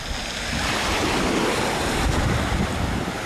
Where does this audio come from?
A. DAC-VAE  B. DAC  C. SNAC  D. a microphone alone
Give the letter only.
D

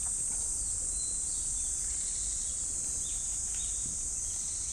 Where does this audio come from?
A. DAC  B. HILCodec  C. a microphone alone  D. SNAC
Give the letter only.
C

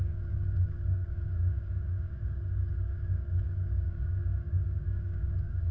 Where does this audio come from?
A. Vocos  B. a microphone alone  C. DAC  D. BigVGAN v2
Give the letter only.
C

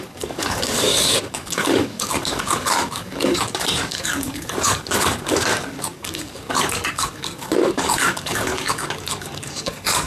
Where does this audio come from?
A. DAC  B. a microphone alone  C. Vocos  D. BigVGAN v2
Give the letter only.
A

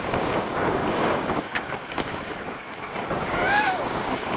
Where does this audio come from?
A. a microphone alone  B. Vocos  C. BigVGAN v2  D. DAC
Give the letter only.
D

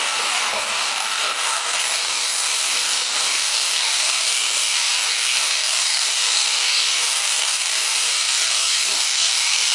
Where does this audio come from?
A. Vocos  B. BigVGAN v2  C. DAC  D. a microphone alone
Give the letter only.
C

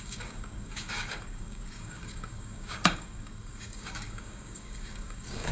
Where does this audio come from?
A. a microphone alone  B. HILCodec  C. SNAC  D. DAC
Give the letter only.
D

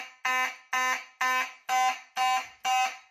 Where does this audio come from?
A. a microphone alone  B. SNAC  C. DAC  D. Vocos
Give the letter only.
A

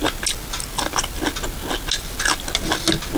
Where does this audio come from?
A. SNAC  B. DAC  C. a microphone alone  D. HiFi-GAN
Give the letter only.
C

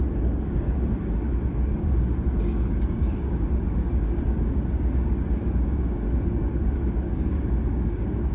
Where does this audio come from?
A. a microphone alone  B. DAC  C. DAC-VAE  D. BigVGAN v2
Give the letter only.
B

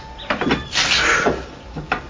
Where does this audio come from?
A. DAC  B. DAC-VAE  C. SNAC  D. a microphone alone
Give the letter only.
D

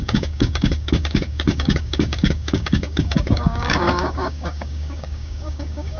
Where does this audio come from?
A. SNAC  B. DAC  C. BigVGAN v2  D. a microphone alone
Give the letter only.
B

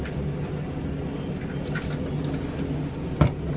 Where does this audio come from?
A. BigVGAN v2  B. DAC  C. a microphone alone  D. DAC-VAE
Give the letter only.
C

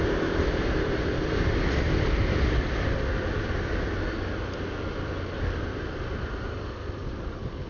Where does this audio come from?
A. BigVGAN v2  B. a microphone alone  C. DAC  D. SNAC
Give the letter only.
B